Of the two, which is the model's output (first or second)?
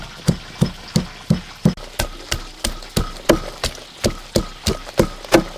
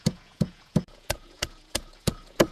second